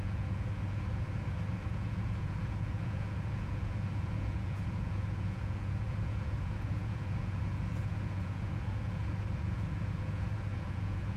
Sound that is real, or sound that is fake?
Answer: fake